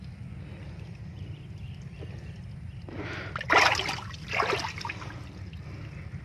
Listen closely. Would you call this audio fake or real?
real